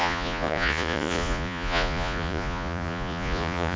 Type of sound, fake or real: fake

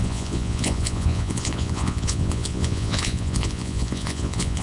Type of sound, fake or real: fake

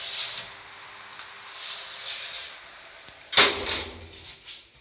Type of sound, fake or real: real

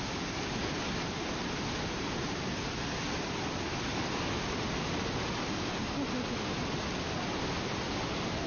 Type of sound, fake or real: real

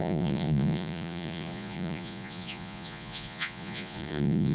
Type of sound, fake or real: fake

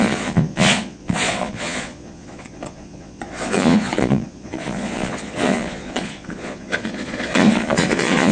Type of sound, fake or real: fake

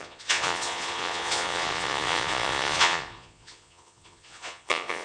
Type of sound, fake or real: fake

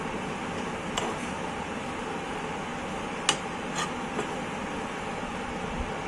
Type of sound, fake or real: real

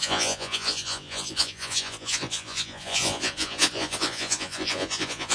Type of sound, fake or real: fake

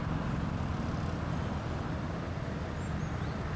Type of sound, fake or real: real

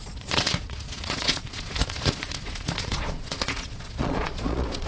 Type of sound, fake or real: fake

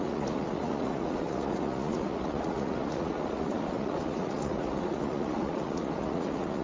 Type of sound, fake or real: fake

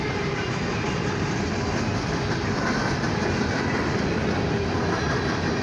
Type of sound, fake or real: real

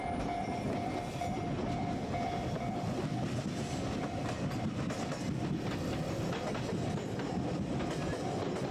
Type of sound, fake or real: real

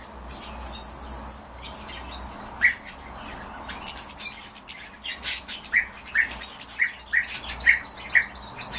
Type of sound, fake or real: real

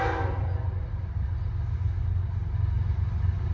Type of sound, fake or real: real